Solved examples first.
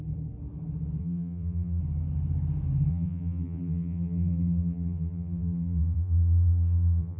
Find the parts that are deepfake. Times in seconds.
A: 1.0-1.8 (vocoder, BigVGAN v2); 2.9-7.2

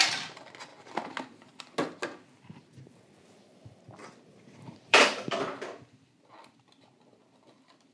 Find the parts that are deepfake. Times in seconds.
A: 4.0-6.9 (vocoder, BigVGAN v2)

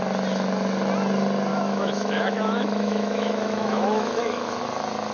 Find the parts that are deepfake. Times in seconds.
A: 1.5-4.6 (autoencoder, DAC-VAE)